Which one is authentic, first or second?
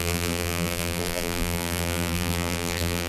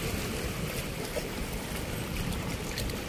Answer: second